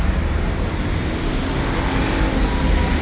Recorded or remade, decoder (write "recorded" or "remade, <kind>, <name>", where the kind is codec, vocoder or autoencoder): recorded